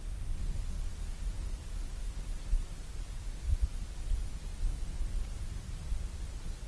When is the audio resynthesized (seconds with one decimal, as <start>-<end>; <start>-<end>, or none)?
none